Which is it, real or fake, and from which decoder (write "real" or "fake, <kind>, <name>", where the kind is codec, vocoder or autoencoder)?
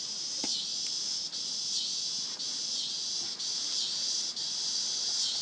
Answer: fake, vocoder, Vocos